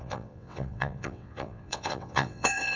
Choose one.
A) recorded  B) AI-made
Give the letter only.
B